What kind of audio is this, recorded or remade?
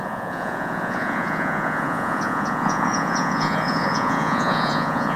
remade